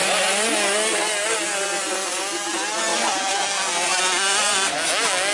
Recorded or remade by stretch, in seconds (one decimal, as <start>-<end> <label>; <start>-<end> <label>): 0.0-5.3 recorded